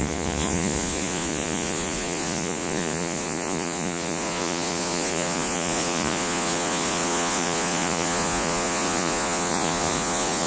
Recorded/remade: remade